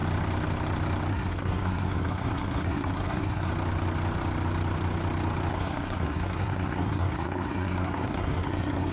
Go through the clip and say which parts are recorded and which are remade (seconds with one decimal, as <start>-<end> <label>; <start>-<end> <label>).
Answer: 0.0-1.1 recorded; 1.1-3.5 remade; 3.5-5.5 recorded; 5.5-8.9 remade